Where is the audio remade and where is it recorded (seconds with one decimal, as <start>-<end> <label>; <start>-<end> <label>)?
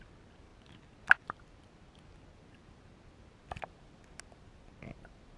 0.0-5.4 recorded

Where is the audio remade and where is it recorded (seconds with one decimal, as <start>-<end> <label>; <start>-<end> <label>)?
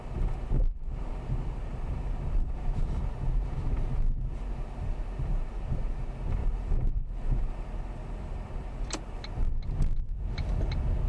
0.0-3.0 remade; 3.0-6.4 recorded; 6.4-9.3 remade; 9.3-11.1 recorded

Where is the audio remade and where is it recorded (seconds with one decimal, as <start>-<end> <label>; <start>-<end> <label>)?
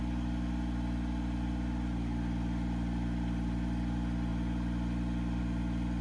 0.0-6.0 recorded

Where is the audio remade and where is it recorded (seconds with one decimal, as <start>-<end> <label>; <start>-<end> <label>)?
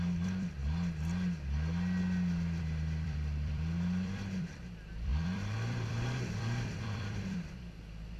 0.0-0.6 remade; 0.6-2.6 recorded; 2.6-8.2 remade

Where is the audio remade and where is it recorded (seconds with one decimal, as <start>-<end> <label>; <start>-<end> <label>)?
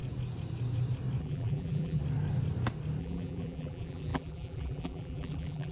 0.0-1.2 recorded; 1.2-2.0 remade; 2.0-3.0 recorded; 3.0-5.7 remade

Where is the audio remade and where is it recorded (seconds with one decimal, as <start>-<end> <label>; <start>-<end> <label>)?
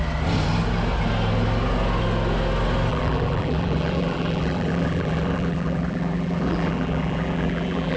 0.0-2.9 recorded; 2.9-8.0 remade